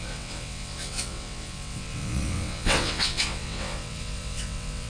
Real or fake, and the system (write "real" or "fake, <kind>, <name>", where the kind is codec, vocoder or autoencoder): fake, vocoder, WaveNeXt